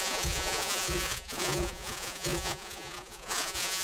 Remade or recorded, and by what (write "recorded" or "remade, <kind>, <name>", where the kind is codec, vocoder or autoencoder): remade, vocoder, Vocos